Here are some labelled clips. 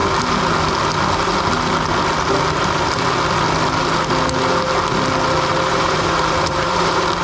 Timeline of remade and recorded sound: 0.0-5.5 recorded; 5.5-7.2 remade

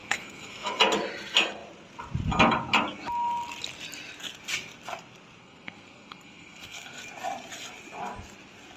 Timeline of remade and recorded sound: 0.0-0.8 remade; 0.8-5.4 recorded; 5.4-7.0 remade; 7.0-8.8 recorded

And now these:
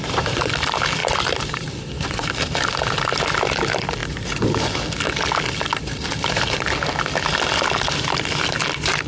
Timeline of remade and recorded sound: 0.0-1.0 recorded; 1.0-1.9 remade; 1.9-9.1 recorded